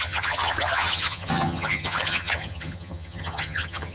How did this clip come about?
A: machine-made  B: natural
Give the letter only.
A